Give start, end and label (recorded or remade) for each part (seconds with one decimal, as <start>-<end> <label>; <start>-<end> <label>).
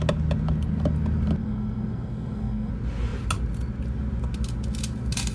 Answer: 0.0-1.4 recorded; 1.4-2.7 remade; 2.7-5.3 recorded